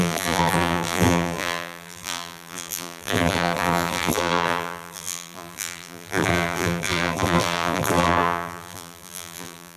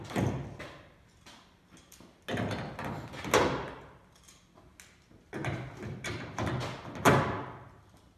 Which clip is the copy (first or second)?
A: first